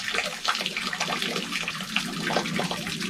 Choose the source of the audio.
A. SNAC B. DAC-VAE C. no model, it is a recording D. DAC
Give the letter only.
C